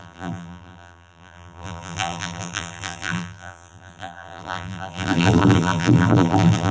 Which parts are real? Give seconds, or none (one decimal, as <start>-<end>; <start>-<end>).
none